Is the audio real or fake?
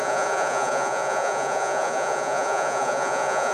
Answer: fake